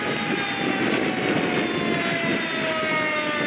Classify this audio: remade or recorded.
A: recorded